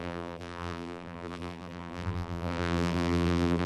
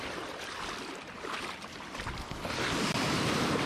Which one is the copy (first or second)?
first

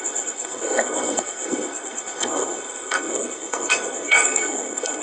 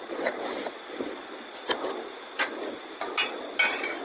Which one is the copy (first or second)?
first